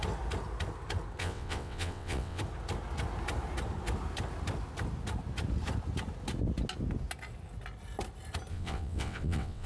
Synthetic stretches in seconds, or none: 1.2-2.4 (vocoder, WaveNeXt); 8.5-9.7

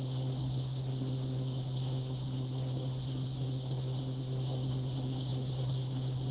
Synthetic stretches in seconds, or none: 0.0-6.3 (codec, SNAC)

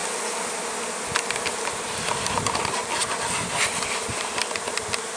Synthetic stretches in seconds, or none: 1.8-2.8 (vocoder, BigVGAN v2); 3.5-5.2

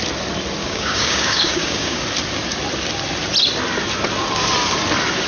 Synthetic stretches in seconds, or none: 0.6-2.0 (codec, DAC)